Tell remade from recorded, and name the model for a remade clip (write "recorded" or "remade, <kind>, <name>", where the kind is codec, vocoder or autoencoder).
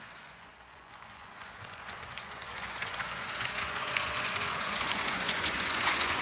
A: remade, vocoder, Vocos